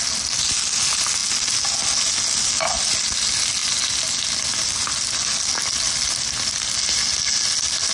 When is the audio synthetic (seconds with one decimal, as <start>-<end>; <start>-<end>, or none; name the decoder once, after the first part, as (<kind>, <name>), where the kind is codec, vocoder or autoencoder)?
none